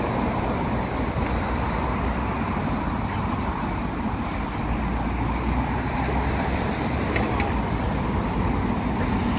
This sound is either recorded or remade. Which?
recorded